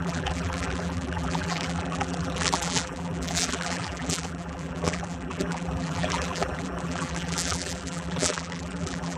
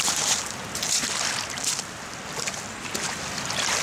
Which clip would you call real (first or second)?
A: second